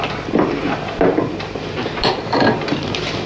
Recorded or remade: remade